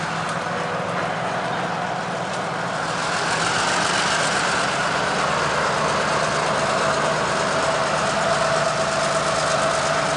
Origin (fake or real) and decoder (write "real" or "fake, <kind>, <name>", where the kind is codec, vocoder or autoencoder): real